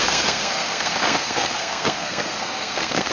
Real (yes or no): no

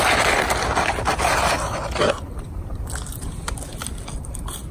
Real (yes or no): yes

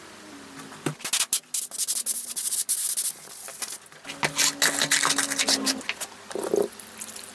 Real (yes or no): yes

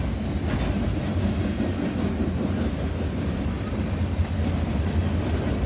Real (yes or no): yes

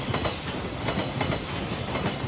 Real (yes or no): yes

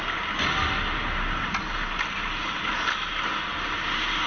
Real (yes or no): yes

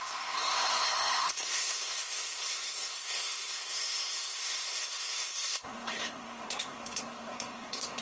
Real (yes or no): no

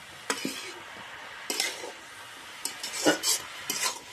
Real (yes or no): yes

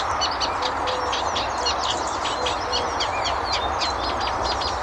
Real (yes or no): yes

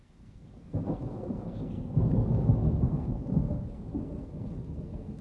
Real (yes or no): no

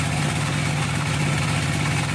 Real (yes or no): yes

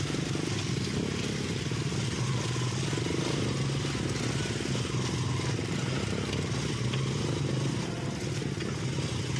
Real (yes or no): yes